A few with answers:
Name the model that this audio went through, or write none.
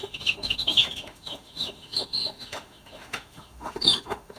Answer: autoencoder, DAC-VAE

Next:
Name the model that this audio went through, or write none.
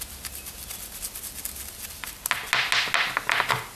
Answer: none